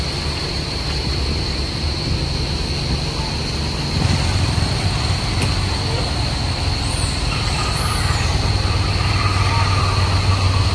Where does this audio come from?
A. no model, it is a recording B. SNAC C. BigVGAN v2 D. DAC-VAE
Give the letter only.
A